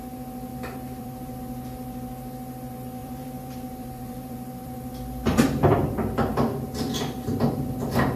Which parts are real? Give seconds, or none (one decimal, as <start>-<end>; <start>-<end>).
0.0-0.5; 1.4-3.0; 6.9-8.2